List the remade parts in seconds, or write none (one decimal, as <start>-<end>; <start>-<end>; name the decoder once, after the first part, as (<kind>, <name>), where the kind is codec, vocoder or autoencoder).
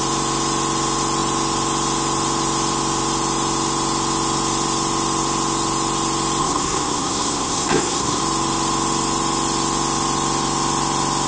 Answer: 6.4-8.2 (codec, SNAC)